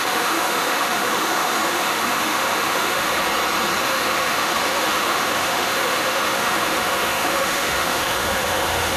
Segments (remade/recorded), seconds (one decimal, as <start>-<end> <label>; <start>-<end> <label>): 0.0-3.2 remade; 3.2-3.8 recorded; 3.8-9.0 remade